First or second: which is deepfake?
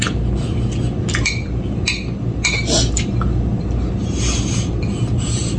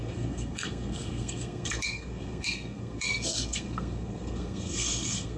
second